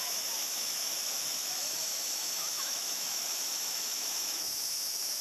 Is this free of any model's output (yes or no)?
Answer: no